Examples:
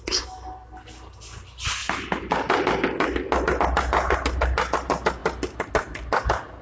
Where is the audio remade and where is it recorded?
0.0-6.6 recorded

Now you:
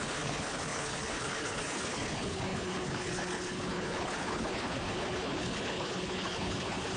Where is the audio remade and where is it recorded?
0.0-7.0 remade

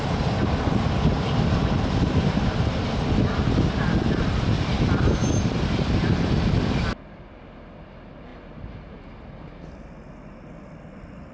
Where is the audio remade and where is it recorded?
0.0-11.3 recorded

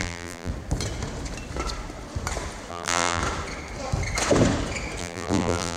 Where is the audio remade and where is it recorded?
0.0-0.5 remade; 0.5-2.7 recorded; 2.7-3.2 remade; 3.2-5.0 recorded; 5.0-5.8 remade

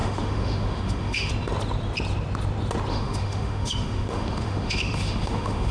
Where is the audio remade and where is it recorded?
0.0-1.3 remade; 1.3-2.9 recorded; 2.9-5.7 remade

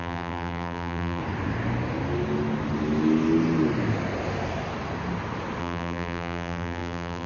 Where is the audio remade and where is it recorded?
0.0-1.2 remade; 1.2-5.6 recorded; 5.6-7.3 remade